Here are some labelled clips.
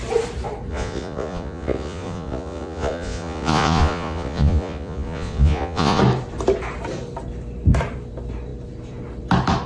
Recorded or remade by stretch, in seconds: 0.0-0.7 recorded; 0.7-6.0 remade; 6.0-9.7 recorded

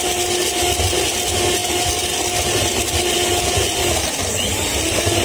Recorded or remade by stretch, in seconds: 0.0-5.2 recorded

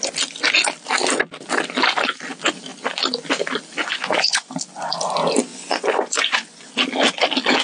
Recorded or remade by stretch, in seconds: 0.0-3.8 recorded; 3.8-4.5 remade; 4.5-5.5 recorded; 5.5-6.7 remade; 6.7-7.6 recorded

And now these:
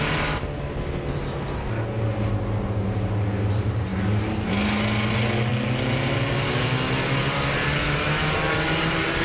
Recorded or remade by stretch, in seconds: 0.0-9.2 recorded

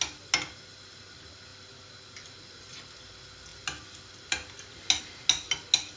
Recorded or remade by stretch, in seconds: 0.0-6.0 recorded

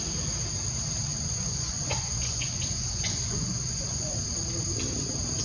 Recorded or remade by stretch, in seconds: 0.0-1.1 recorded; 1.1-4.1 remade; 4.1-5.4 recorded